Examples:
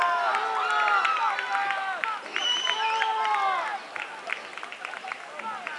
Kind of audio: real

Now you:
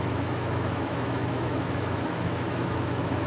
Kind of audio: fake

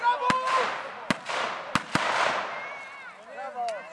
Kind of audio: real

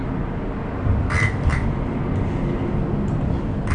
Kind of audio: real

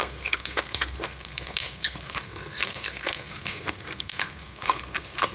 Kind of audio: fake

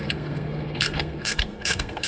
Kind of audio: fake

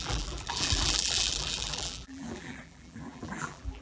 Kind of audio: fake